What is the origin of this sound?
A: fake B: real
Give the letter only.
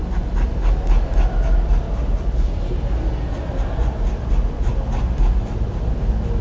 B